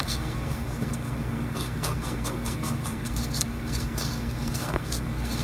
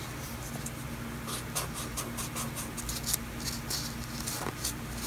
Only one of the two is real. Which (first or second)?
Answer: second